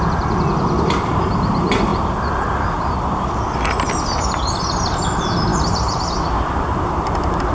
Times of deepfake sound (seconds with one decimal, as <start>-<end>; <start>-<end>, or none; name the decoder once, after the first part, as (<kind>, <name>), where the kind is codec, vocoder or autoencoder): none